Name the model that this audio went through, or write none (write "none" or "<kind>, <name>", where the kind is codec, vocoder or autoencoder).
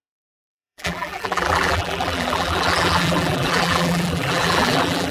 vocoder, BigVGAN v2